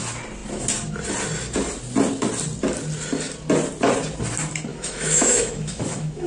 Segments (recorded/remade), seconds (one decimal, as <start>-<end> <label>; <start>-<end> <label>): 0.0-4.7 recorded; 4.7-6.3 remade